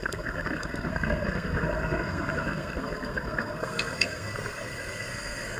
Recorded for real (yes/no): no